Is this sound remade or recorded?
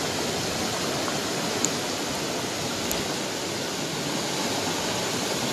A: recorded